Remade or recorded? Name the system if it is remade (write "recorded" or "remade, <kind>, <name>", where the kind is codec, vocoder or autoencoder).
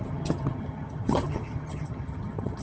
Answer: remade, vocoder, HiFi-GAN